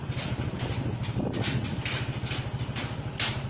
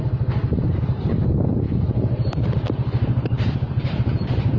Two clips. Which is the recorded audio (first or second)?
first